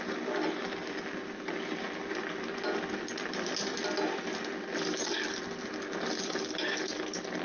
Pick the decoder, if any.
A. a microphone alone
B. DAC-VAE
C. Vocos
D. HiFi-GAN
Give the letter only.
A